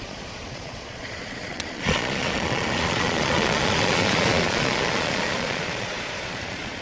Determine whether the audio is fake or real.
fake